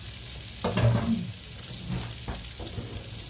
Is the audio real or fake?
real